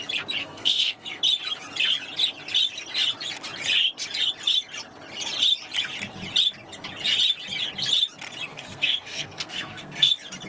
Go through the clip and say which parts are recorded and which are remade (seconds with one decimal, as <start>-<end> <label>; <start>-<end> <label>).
0.0-0.4 recorded; 0.4-1.2 remade; 1.2-8.5 recorded; 8.5-10.1 remade; 10.1-10.5 recorded